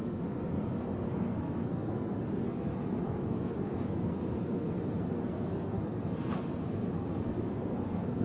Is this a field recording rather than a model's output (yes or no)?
no